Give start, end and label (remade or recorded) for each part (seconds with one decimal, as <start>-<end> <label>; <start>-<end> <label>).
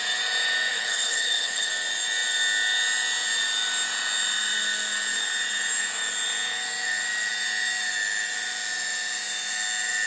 0.0-0.7 recorded; 0.7-1.7 remade; 1.7-10.1 recorded